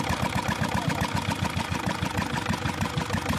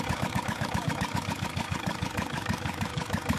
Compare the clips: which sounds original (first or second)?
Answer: first